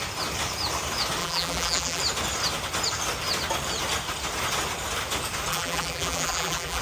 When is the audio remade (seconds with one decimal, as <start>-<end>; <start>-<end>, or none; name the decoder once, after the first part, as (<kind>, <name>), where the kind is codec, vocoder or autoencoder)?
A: 1.2-2.0 (vocoder, BigVGAN v2); 5.5-6.8